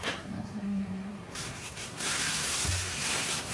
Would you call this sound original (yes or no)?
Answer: no